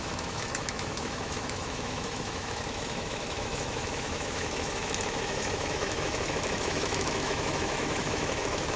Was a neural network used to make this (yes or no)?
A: yes